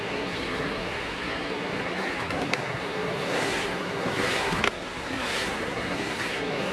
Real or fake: fake